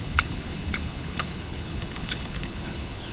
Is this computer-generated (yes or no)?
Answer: yes